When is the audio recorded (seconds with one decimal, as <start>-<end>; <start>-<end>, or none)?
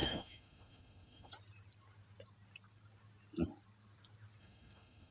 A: 1.3-4.4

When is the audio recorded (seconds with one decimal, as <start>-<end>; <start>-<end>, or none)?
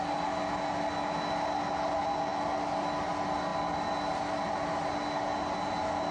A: 0.0-6.1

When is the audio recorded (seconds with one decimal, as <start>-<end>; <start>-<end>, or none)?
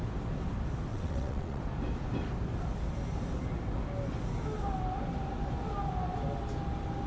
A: 0.0-0.9; 1.6-7.1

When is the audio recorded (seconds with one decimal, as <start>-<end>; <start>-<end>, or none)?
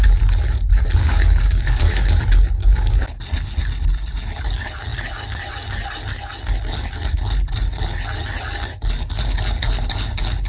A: 0.0-1.0; 2.2-2.6; 3.2-10.5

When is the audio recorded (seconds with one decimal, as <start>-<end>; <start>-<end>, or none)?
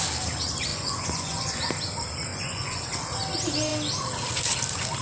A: 0.0-0.7; 1.6-2.3; 2.8-5.0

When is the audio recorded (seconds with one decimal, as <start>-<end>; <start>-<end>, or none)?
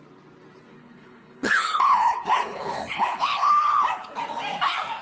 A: 0.0-0.7; 3.5-5.0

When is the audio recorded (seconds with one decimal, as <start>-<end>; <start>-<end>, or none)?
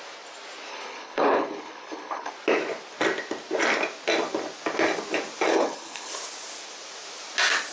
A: 0.0-0.7; 2.3-5.5; 6.1-7.7